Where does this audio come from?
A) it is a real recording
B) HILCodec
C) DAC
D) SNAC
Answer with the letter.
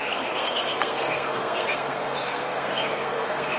D